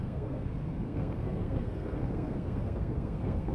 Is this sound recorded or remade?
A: remade